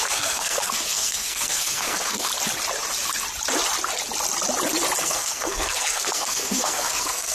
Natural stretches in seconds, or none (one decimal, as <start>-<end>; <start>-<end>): 2.3-5.0

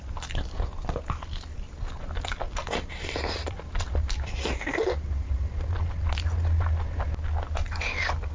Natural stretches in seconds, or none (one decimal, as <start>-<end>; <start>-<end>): 0.0-2.6; 5.5-8.3

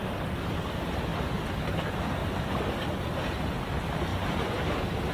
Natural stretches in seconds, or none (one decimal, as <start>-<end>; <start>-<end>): 0.0-4.1

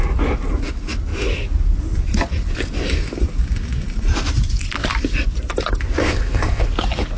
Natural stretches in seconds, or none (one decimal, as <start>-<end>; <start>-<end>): 0.0-6.0; 6.7-7.2

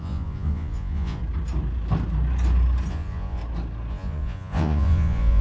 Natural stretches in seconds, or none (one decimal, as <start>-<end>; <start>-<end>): 1.2-2.9; 3.4-3.9

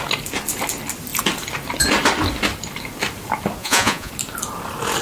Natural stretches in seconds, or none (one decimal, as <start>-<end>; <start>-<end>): 0.0-3.6; 4.1-5.0

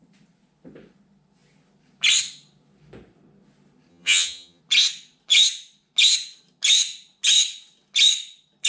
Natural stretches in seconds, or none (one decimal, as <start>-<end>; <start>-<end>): 0.0-3.9; 4.6-8.7

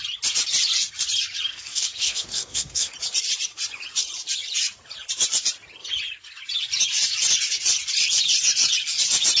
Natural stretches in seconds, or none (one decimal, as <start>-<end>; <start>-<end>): 0.0-1.5; 2.9-9.4